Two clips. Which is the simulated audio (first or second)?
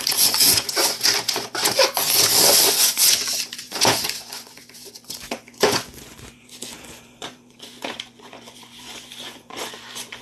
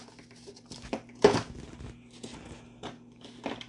first